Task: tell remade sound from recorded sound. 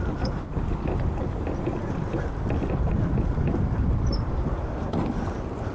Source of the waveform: recorded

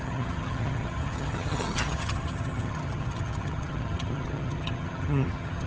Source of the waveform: remade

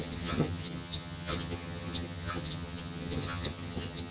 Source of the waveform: remade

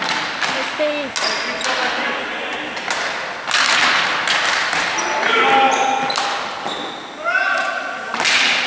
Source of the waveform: recorded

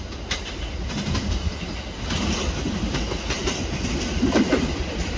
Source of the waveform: recorded